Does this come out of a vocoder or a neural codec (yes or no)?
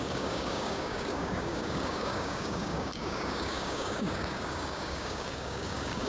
yes